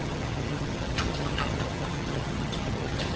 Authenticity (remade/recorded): remade